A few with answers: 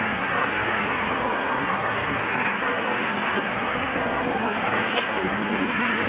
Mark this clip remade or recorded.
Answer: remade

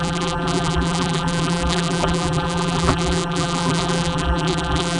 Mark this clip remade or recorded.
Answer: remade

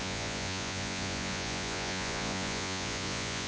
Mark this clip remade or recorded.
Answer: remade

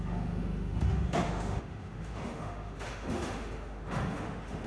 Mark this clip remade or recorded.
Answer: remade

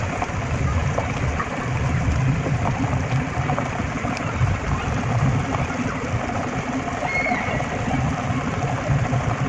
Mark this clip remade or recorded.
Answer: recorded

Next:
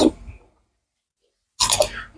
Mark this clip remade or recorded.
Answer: recorded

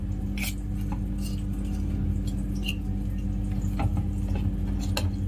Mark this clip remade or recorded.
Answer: recorded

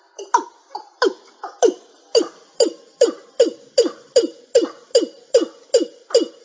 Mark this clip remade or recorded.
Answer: recorded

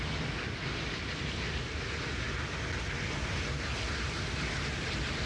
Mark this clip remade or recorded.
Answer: recorded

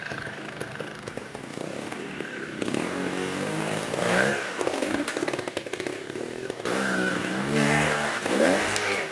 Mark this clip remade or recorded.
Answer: remade